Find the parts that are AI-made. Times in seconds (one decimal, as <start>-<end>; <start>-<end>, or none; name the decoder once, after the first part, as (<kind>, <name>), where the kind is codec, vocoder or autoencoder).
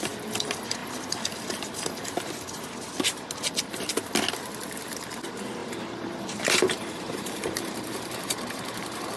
5.6-9.2 (vocoder, BigVGAN v2)